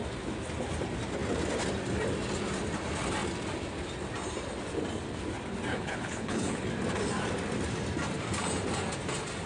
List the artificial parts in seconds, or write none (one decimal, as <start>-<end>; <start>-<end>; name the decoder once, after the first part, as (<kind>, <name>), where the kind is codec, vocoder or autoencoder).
5.7-6.7 (codec, HILCodec)